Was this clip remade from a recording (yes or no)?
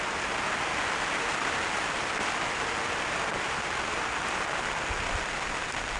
no